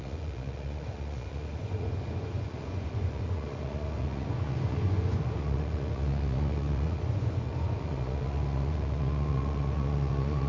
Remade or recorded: remade